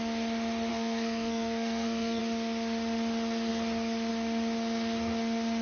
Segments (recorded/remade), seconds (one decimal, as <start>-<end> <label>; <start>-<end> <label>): 0.0-0.7 recorded; 0.7-2.2 remade; 2.2-5.6 recorded